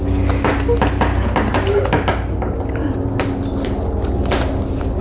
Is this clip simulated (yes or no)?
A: no